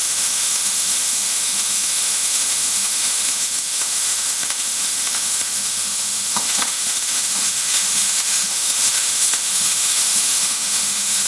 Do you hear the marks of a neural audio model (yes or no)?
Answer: yes